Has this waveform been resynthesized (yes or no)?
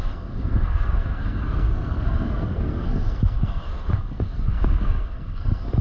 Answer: yes